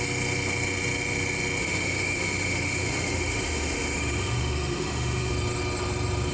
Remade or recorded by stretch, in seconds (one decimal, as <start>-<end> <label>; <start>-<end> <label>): 0.0-1.6 recorded; 1.6-5.3 remade; 5.3-6.3 recorded